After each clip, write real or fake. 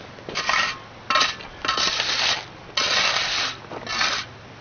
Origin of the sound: real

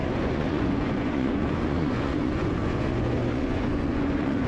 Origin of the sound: fake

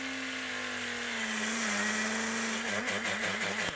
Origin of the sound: real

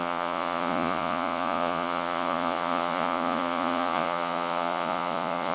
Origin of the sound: fake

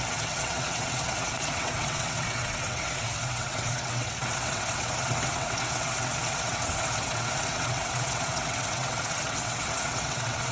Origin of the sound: fake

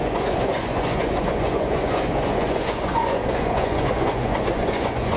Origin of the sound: fake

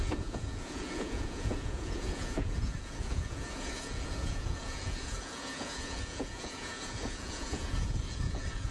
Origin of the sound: fake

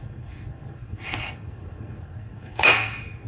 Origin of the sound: fake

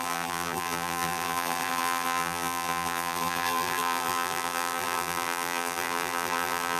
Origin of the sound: fake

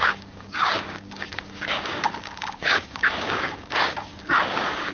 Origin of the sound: fake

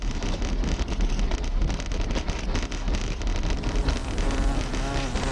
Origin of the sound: real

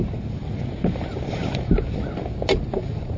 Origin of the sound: real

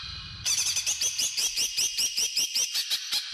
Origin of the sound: fake